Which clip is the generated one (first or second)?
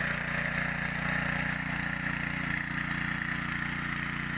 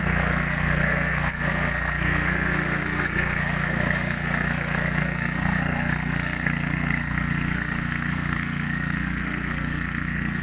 second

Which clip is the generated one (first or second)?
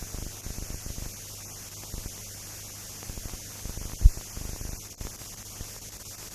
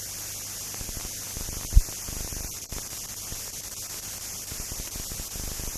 second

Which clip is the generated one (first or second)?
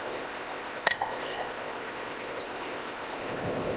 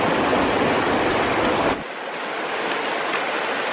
first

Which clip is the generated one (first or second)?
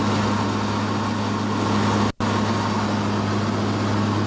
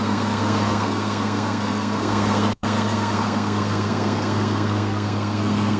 second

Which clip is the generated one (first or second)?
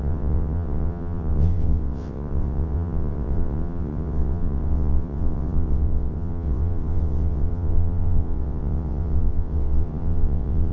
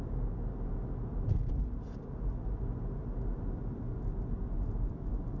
first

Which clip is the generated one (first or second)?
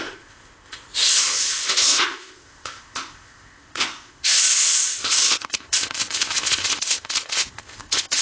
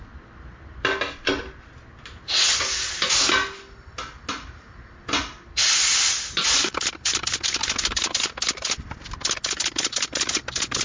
first